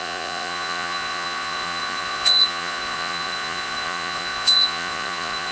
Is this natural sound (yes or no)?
no